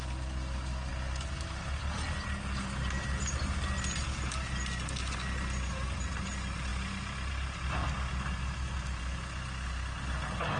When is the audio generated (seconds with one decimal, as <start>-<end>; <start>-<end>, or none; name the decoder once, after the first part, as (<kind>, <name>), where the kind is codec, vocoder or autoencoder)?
none